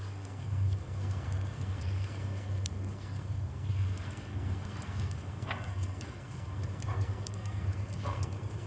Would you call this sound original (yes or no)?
no